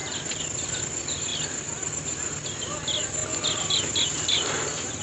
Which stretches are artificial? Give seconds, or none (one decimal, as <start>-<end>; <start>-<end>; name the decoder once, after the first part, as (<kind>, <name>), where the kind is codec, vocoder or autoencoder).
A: none